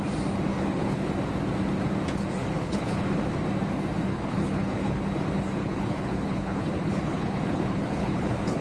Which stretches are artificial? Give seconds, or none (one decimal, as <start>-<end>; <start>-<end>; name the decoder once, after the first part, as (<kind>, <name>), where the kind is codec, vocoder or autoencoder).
0.5-1.1 (codec, HILCodec); 2.4-3.2; 4.1-5.0; 5.6-8.6